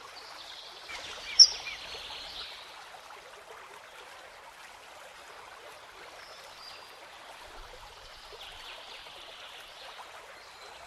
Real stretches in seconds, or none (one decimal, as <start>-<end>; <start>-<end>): 0.0-1.1; 1.8-10.9